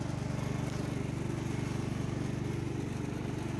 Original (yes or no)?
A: yes